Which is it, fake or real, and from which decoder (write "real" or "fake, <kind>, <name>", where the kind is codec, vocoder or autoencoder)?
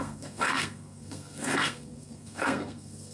fake, codec, SNAC